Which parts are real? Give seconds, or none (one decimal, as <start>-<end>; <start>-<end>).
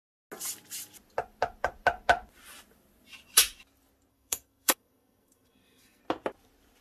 0.0-4.1; 6.0-6.8